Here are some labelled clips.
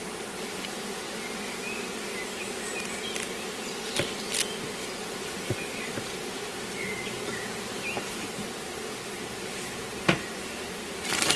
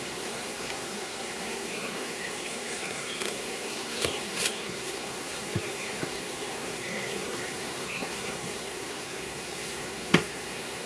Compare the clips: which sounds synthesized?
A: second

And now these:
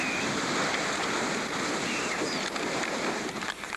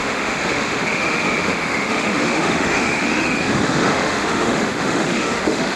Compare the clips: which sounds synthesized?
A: second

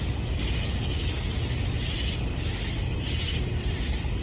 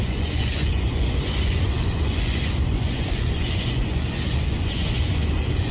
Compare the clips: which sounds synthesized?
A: second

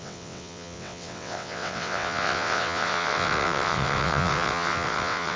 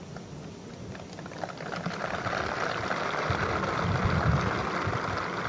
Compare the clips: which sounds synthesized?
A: first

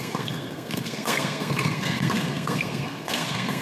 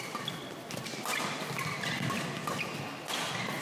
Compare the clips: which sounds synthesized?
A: first